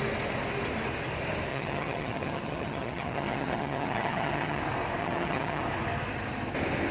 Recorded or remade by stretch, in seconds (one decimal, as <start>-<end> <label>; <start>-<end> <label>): 0.0-1.5 recorded; 1.5-4.6 remade; 4.6-5.0 recorded; 5.0-5.6 remade; 5.6-6.9 recorded